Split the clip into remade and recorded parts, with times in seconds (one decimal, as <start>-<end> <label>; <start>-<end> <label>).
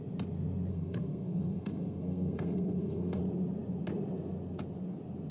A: 0.0-0.7 recorded; 0.7-3.2 remade; 3.2-5.3 recorded